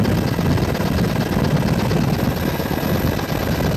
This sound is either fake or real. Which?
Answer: real